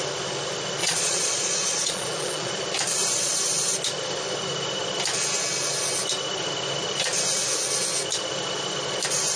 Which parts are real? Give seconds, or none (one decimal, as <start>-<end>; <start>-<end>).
0.0-0.8; 2.5-9.4